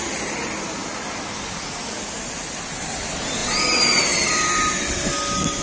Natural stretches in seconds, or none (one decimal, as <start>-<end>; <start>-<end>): 0.0-5.6

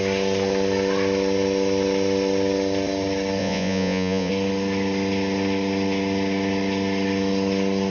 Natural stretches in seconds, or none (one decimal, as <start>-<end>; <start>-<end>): 0.0-3.4; 4.3-7.9

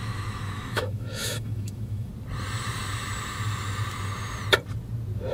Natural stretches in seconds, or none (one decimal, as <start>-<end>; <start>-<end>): 2.1-5.3